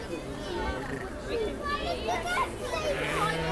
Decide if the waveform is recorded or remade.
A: recorded